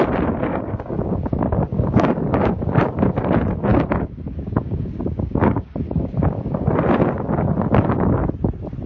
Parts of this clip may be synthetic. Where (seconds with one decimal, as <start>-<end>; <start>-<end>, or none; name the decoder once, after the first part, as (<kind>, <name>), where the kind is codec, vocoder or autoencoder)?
0.5-2.6 (codec, DAC); 3.7-6.7

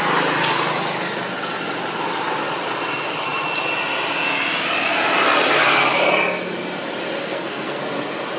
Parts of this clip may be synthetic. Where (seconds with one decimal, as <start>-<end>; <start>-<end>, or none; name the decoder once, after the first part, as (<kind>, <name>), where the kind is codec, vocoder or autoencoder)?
7.2-7.8 (codec, SNAC)

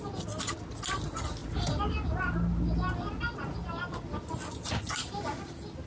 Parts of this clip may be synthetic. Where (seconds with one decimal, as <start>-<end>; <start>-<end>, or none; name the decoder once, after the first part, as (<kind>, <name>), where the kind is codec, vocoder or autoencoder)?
none